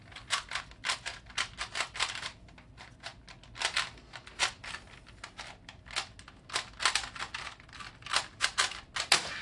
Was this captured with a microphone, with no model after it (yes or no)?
yes